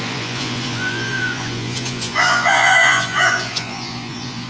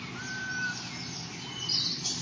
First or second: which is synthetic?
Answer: first